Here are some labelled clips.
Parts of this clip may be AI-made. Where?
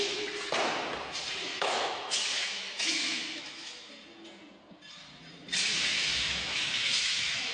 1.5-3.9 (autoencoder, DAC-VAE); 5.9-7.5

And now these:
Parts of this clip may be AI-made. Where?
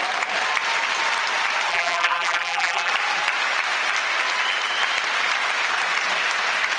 1.7-2.9 (vocoder, BigVGAN v2)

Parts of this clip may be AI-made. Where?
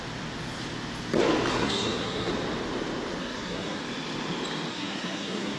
1.5-2.3 (codec, SNAC); 3.2-3.8; 4.7-5.6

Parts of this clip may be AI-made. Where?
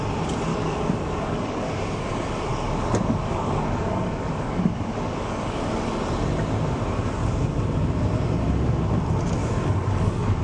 0.5-2.1 (codec, DAC); 2.5-6.0; 9.4-10.4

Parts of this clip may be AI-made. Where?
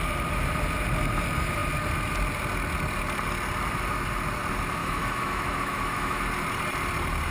4.8-6.2 (autoencoder, DAC-VAE)